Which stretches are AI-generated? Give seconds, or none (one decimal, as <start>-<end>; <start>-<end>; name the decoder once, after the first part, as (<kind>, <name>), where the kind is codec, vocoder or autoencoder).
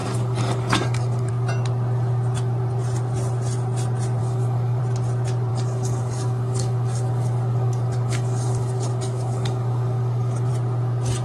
0.0-1.3 (codec, DAC); 4.2-4.8; 5.5-10.5